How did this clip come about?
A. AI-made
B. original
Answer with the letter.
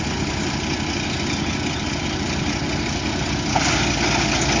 B